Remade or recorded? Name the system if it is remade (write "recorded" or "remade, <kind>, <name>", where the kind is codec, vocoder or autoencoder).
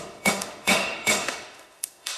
remade, autoencoder, DAC-VAE